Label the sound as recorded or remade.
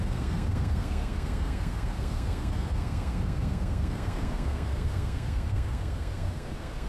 remade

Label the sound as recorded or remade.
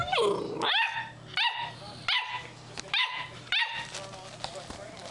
recorded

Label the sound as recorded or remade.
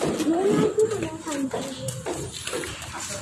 recorded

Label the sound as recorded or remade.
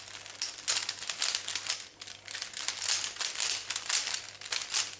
recorded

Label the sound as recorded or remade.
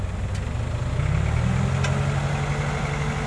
recorded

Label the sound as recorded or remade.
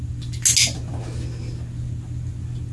recorded